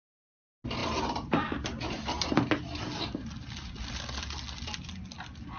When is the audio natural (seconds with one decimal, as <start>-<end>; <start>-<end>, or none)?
0.0-5.6